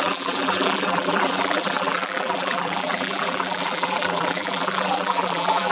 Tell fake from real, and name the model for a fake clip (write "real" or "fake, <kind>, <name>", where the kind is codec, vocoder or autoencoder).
fake, vocoder, BigVGAN v2